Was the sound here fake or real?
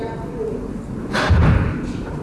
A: real